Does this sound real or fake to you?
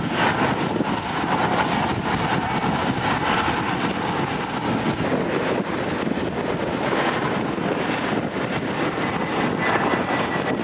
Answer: real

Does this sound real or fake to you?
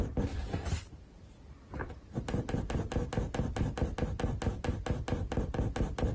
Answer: real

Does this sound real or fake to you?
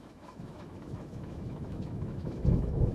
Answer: fake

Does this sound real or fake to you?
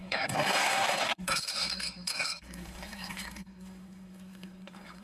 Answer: fake